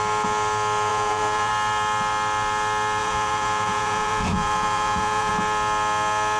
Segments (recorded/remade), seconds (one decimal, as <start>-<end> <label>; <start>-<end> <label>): 0.0-0.9 recorded; 0.9-1.5 remade; 1.5-3.0 recorded; 3.0-5.3 remade; 5.3-6.4 recorded